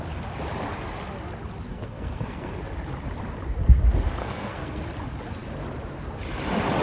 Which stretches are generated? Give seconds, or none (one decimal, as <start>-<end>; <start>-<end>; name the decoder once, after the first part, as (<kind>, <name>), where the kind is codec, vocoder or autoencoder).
1.7-2.6 (codec, SNAC); 4.2-4.8